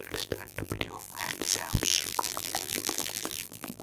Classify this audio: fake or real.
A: fake